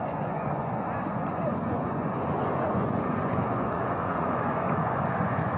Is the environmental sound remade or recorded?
remade